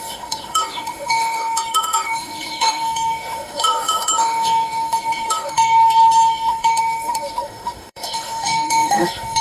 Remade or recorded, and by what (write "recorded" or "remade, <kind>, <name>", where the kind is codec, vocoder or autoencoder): remade, autoencoder, DAC-VAE